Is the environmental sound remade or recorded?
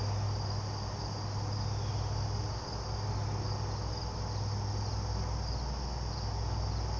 recorded